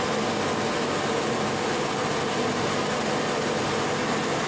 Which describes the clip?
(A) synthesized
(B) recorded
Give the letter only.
B